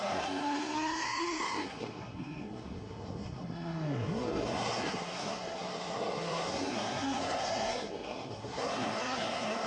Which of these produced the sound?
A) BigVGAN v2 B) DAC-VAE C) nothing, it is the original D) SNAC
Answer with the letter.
D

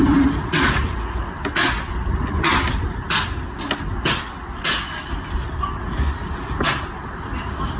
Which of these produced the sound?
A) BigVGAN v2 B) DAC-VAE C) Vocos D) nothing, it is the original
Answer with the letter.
D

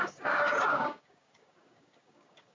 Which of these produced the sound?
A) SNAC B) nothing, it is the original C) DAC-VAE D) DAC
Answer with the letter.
D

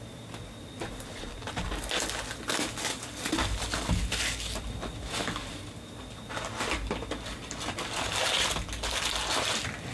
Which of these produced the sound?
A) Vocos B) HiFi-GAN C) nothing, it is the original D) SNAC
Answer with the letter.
C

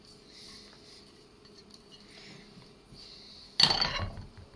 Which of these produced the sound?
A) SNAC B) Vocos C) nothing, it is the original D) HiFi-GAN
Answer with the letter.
C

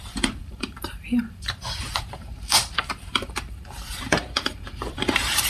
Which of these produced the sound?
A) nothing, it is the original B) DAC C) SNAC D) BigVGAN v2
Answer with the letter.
D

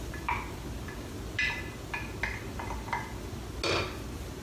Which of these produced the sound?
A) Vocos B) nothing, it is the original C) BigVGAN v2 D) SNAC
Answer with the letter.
B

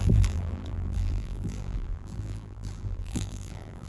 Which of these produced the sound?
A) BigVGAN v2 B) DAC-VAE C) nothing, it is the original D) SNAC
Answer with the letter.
A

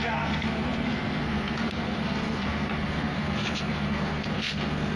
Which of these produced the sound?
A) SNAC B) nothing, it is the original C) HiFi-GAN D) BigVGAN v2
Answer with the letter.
A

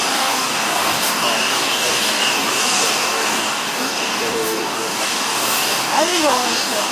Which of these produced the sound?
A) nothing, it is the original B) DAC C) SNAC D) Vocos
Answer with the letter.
B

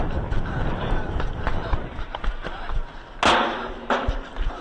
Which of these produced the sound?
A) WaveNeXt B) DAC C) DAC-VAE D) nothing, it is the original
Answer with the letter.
D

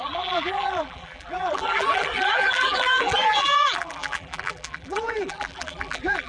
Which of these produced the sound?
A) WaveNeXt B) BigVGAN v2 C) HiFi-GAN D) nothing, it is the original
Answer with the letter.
B